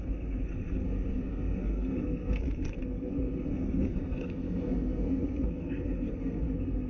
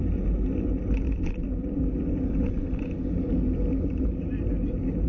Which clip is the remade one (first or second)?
first